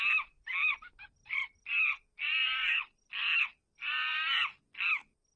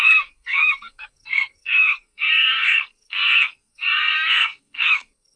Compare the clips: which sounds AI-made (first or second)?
second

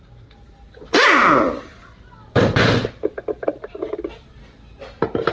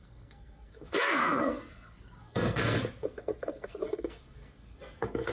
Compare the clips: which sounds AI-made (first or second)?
second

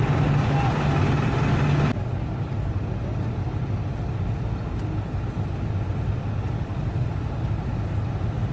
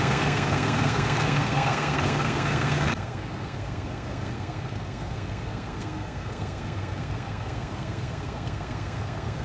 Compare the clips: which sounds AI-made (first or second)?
second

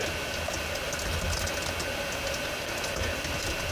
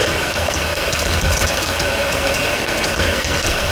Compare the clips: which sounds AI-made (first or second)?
second